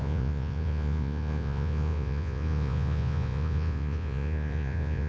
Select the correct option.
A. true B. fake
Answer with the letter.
B